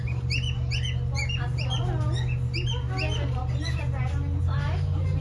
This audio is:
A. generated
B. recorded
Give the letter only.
B